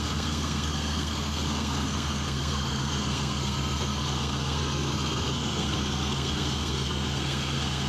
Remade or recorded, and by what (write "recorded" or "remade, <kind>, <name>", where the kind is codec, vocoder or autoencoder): remade, codec, SNAC